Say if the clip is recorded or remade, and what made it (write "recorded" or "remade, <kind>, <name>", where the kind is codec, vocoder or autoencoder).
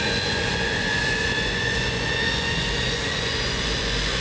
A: remade, vocoder, Vocos